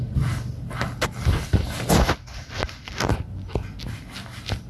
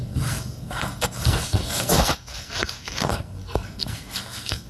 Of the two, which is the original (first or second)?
first